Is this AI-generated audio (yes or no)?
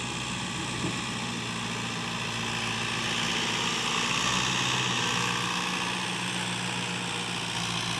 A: no